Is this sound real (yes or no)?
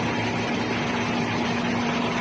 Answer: yes